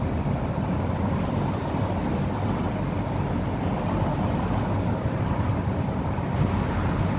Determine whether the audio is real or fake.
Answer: real